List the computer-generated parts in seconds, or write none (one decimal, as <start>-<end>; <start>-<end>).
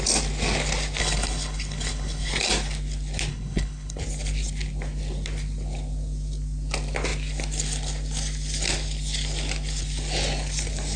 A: 1.0-2.3; 3.3-4.0